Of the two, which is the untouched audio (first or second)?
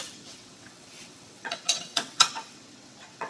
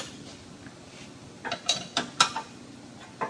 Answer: second